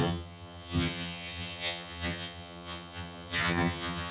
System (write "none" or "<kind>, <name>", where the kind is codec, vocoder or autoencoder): vocoder, HiFi-GAN